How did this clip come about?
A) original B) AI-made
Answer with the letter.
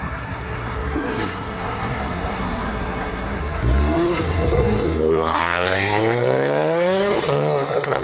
B